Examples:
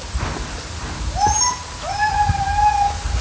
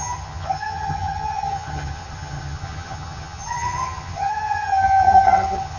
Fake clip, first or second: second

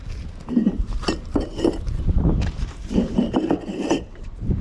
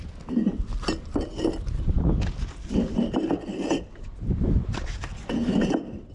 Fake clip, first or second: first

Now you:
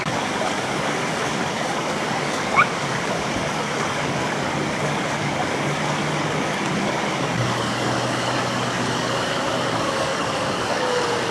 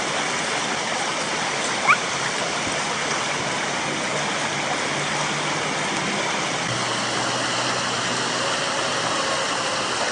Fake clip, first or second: first